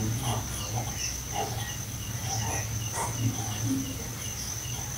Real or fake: real